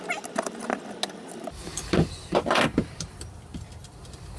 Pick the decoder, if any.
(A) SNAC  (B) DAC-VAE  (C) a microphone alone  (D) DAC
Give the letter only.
C